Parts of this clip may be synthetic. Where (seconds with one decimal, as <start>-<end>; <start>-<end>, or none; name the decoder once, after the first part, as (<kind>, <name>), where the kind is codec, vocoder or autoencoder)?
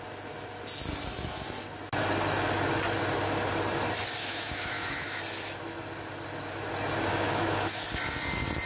4.2-5.2 (autoencoder, DAC-VAE); 7.1-7.8